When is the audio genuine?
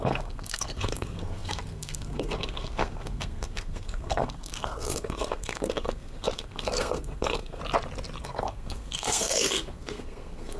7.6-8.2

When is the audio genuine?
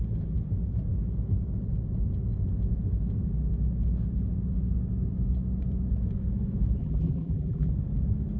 0.0-6.8; 7.7-8.4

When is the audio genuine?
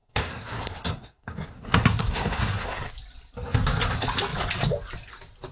2.9-5.5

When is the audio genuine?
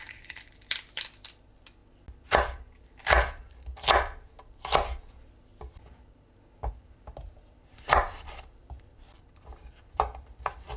1.8-6.7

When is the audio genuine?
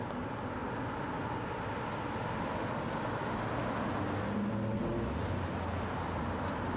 0.0-6.8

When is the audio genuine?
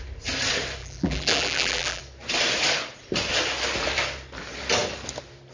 0.0-0.8; 2.0-5.5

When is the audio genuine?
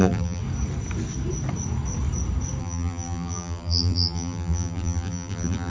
0.4-2.6